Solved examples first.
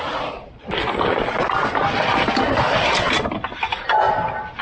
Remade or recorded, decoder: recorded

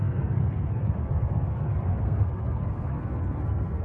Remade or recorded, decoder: remade, codec, SNAC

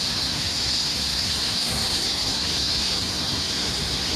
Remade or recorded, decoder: remade, codec, SNAC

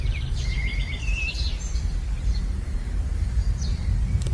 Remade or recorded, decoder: remade, vocoder, BigVGAN v2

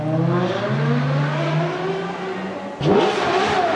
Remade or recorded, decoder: recorded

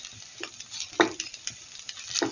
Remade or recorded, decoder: recorded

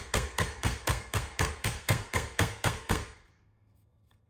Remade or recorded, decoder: remade, codec, SNAC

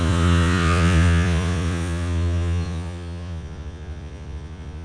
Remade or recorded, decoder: remade, vocoder, Vocos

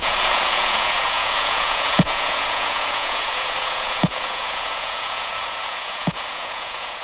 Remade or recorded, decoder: remade, vocoder, Vocos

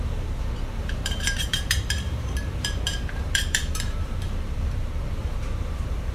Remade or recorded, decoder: remade, vocoder, BigVGAN v2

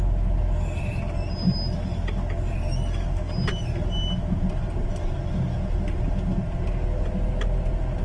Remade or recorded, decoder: recorded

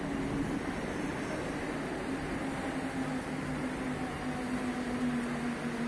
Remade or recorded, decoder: recorded